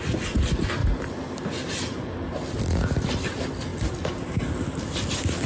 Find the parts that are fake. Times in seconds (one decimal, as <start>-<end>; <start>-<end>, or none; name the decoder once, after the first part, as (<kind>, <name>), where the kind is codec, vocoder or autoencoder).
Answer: 0.0-0.8 (vocoder, BigVGAN v2); 2.6-3.7; 4.8-5.5